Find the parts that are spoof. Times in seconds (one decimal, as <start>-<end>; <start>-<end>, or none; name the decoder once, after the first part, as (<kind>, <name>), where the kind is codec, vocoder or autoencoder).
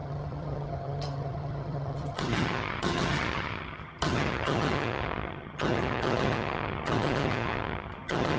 0.0-8.4 (vocoder, HiFi-GAN)